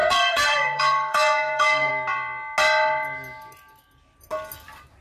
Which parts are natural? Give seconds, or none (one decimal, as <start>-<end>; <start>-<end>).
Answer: 1.9-5.0

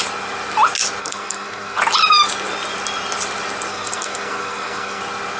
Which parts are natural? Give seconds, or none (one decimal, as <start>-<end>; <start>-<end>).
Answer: 0.0-1.0; 1.8-3.7; 5.0-5.4